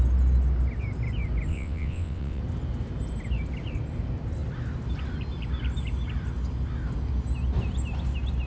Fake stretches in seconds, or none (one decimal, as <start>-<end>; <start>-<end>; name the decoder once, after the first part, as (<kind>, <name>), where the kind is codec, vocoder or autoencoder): 1.5-2.4 (vocoder, WaveNeXt)